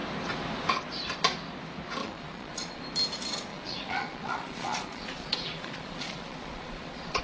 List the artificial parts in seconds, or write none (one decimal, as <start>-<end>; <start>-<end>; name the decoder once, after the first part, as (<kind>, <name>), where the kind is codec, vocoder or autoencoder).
2.0-2.8 (vocoder, Vocos); 3.5-7.2